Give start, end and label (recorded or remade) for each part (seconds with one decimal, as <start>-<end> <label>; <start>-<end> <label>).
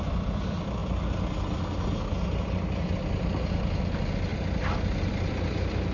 0.0-5.9 recorded